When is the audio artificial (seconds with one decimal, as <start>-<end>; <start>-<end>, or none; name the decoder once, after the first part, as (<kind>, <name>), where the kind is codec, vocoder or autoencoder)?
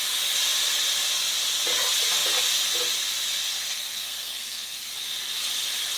3.4-4.9 (codec, SNAC)